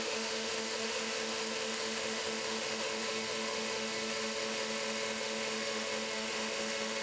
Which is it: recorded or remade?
remade